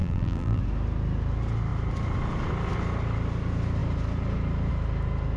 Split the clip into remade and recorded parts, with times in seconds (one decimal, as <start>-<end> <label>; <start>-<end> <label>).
0.0-0.6 remade; 0.6-5.4 recorded